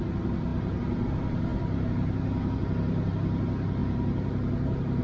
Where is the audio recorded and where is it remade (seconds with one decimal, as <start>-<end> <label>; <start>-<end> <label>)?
0.0-5.0 recorded